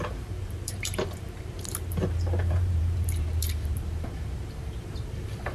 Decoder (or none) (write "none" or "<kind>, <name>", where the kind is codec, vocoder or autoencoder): vocoder, BigVGAN v2